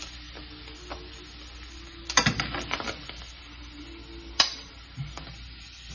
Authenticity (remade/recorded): recorded